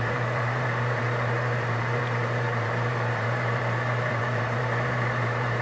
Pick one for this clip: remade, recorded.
remade